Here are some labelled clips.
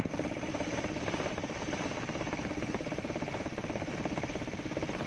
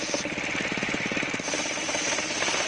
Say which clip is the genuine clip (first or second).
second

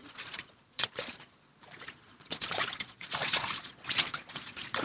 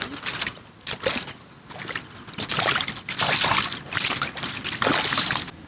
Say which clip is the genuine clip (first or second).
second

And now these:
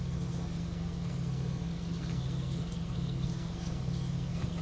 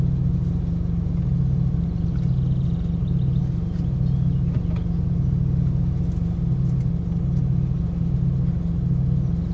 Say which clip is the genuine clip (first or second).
second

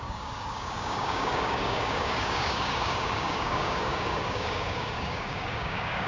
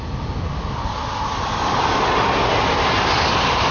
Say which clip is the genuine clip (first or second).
second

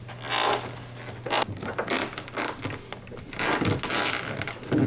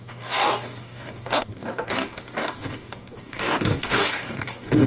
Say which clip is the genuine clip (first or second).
first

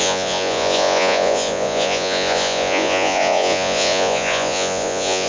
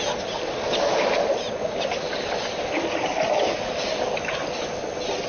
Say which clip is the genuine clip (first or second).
second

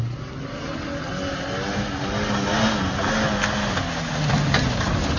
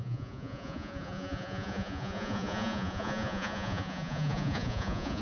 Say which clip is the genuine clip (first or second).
first